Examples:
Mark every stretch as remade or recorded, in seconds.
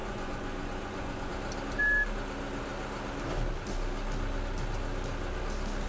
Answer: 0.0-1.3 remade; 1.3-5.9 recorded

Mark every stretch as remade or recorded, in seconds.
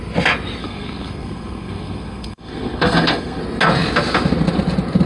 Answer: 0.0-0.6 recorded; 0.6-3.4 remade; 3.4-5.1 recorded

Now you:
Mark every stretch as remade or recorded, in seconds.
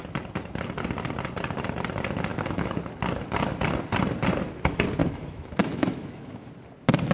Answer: 0.0-2.3 recorded; 2.3-2.8 remade; 2.8-5.0 recorded; 5.0-6.5 remade; 6.5-7.1 recorded